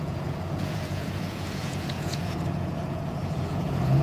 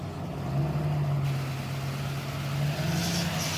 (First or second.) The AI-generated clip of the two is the first